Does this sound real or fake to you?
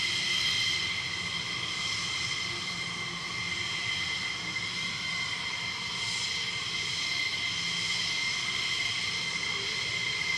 real